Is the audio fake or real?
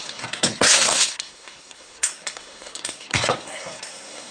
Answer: fake